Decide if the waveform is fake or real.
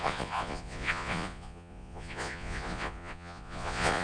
fake